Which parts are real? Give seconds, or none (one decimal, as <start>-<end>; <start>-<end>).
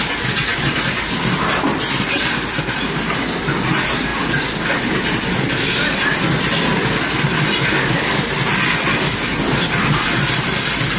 0.0-11.0